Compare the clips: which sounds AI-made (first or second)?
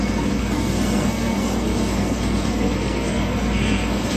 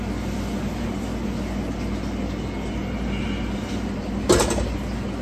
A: first